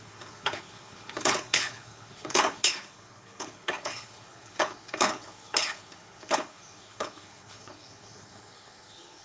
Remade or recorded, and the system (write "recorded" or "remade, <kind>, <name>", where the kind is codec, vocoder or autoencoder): remade, codec, HILCodec